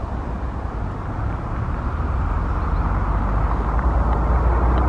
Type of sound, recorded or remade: recorded